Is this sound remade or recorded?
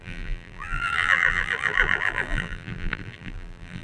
remade